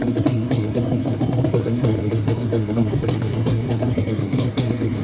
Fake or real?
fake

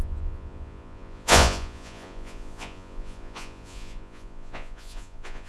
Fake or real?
fake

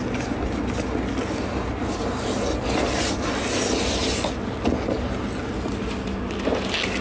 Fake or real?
real